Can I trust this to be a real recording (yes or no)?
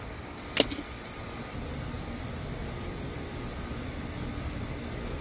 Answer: yes